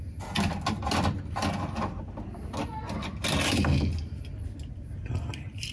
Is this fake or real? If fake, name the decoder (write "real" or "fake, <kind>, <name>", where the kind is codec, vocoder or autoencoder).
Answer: real